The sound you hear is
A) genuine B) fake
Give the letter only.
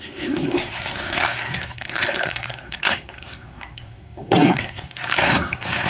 B